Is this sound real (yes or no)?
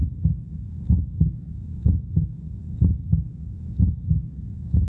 no